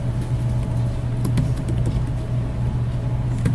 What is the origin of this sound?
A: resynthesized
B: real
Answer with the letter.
B